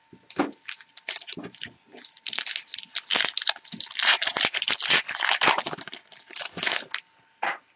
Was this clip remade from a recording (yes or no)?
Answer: no